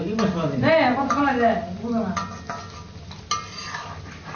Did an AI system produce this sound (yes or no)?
no